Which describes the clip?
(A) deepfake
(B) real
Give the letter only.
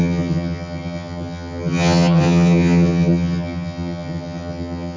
A